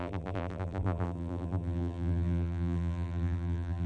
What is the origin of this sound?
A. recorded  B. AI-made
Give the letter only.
B